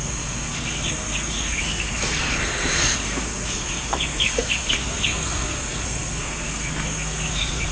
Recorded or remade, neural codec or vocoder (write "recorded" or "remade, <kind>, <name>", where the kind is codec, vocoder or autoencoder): remade, codec, SNAC